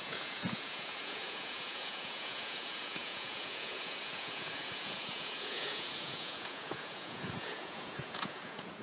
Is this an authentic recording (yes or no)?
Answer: no